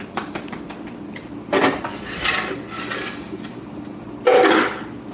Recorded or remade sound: recorded